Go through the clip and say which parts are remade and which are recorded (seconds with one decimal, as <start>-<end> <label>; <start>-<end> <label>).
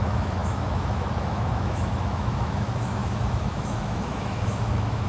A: 0.0-5.1 remade